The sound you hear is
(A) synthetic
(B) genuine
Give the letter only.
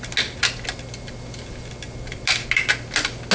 B